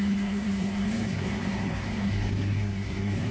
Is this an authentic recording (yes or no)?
no